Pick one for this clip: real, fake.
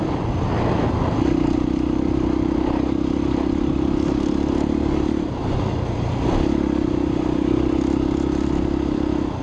real